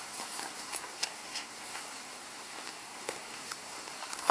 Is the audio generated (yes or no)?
yes